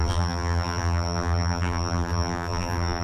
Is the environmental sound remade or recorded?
remade